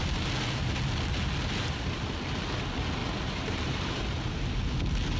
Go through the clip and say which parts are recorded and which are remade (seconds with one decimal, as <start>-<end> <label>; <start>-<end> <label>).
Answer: 0.0-3.0 recorded; 3.0-4.0 remade; 4.0-5.2 recorded